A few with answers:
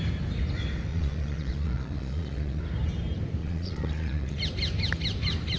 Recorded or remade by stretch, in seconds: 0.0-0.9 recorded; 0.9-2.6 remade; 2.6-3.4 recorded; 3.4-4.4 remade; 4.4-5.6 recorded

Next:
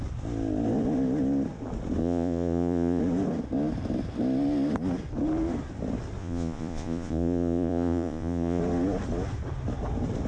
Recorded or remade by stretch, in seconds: 0.0-2.0 recorded; 2.0-3.0 remade; 3.0-6.2 recorded; 6.2-8.6 remade; 8.6-10.3 recorded

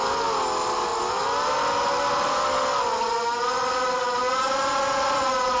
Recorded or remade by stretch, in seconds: 0.0-5.6 recorded

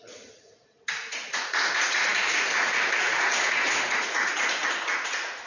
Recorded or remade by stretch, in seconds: 0.0-5.5 remade

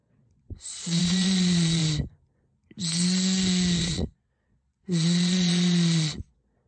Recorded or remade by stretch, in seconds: 0.0-1.8 remade; 1.8-3.8 recorded; 3.8-6.7 remade

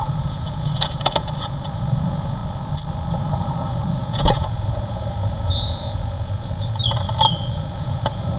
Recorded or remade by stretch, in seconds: 0.0-2.4 remade; 2.4-3.1 recorded; 3.1-6.8 remade; 6.8-7.4 recorded; 7.4-8.4 remade